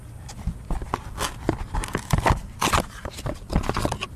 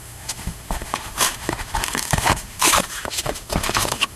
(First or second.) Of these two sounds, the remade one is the second